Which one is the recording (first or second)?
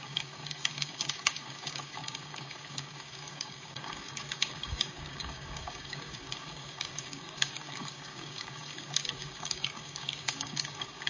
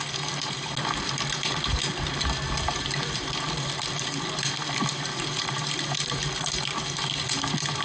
second